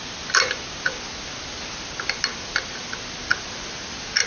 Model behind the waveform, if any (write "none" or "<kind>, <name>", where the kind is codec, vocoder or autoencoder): none